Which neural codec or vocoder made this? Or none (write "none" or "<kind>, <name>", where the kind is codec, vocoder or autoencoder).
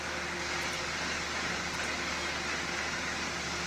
none